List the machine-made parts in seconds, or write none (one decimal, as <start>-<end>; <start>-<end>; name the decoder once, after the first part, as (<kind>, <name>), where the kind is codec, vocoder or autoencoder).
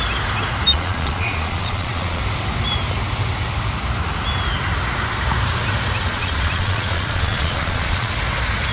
0.7-2.2 (vocoder, Vocos); 6.1-8.1